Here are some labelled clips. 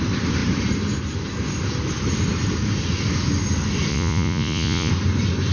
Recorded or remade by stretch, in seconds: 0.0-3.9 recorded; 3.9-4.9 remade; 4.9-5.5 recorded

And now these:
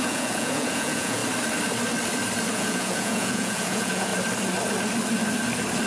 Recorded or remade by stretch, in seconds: 0.0-1.2 remade; 1.2-2.5 recorded; 2.5-4.1 remade; 4.1-5.9 recorded

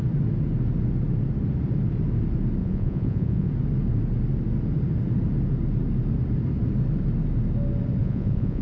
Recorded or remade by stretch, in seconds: 0.0-2.6 recorded; 2.6-3.5 remade; 3.5-8.0 recorded; 8.0-8.6 remade

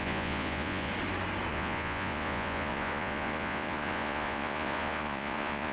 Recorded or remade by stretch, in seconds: 0.0-0.9 remade; 0.9-1.5 recorded; 1.5-5.7 remade

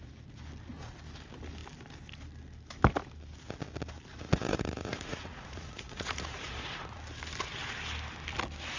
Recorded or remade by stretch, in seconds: 0.0-4.1 recorded; 4.1-7.0 remade; 7.0-8.8 recorded

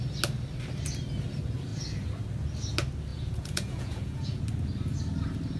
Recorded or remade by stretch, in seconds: 0.0-3.1 recorded; 3.1-4.4 remade; 4.4-5.6 recorded